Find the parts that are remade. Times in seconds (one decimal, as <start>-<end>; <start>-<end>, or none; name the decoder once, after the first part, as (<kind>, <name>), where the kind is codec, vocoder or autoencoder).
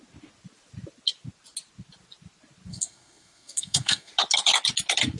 2.7-4.1 (codec, SNAC)